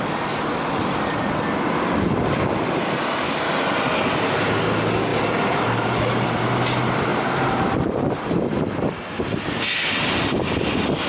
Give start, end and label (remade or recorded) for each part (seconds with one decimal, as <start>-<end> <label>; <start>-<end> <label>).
0.0-5.1 recorded; 5.1-6.4 remade; 6.4-7.1 recorded; 7.1-8.3 remade; 8.3-11.1 recorded